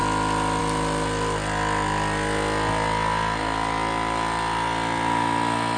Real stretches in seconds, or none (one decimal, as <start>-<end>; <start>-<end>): 0.0-5.8